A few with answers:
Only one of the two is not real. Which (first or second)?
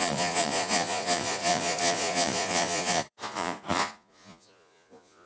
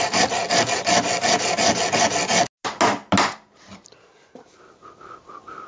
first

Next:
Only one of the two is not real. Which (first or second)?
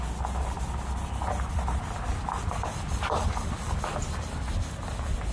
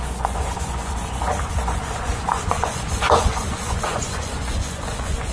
second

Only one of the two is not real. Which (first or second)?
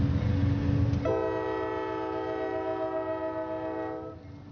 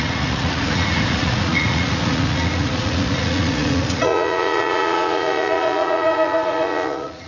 second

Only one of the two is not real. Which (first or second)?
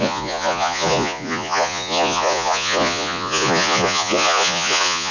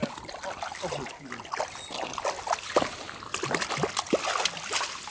first